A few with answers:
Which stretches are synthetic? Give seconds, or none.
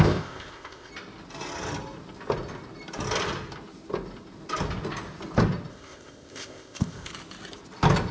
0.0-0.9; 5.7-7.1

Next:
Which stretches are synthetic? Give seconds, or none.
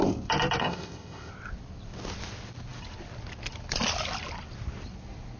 0.6-1.3